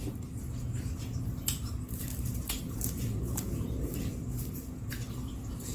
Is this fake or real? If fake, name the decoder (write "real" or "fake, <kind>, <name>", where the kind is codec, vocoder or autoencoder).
fake, vocoder, BigVGAN v2